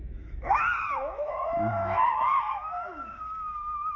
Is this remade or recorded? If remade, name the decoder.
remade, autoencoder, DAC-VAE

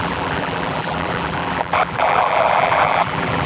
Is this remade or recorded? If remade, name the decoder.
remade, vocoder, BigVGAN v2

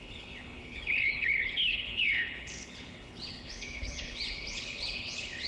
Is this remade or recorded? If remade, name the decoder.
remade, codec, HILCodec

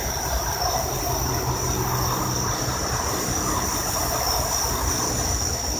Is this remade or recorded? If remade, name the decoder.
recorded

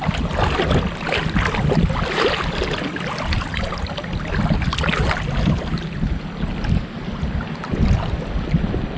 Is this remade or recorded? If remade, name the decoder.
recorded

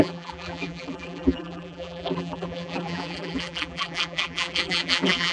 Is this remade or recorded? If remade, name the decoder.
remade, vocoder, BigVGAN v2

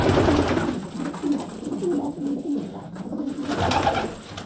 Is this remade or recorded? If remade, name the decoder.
recorded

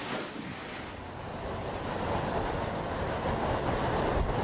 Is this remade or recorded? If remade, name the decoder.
recorded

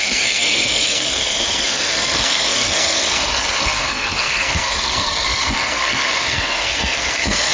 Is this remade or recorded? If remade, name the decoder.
remade, codec, SNAC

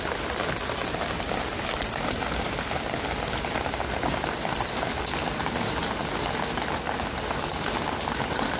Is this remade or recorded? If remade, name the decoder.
recorded